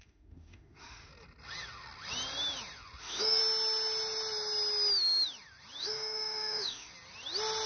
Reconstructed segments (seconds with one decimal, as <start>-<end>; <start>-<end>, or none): 0.0-1.1; 3.0-3.4; 5.8-6.9